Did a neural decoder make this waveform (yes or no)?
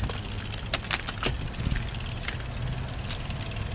no